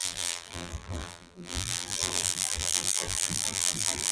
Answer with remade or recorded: remade